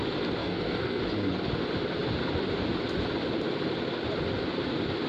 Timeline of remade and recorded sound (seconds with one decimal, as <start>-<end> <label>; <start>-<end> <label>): 0.0-0.4 recorded; 0.4-1.0 remade; 1.0-5.1 recorded